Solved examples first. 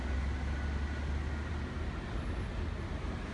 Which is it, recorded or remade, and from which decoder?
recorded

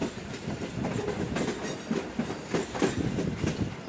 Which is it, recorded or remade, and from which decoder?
recorded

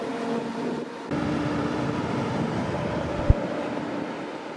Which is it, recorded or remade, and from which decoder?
remade, vocoder, BigVGAN v2